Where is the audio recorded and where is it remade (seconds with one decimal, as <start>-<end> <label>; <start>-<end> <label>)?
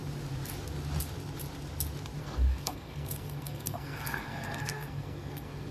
0.0-2.2 recorded; 2.2-5.7 remade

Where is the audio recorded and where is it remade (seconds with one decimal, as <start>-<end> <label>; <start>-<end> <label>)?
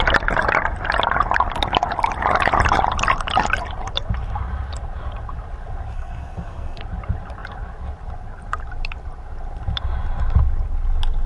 0.0-5.9 recorded; 5.9-6.8 remade; 6.8-11.3 recorded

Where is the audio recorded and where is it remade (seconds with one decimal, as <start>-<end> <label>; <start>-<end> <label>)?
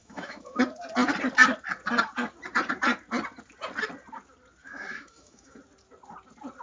0.0-0.6 remade; 0.6-4.6 recorded; 4.6-5.6 remade; 5.6-6.6 recorded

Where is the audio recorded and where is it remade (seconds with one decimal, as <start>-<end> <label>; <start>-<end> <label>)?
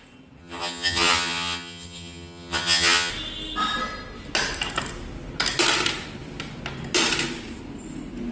0.0-0.4 recorded; 0.4-3.1 remade; 3.1-8.3 recorded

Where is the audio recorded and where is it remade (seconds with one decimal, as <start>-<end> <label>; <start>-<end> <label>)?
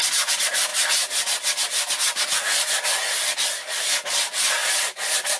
0.0-5.4 recorded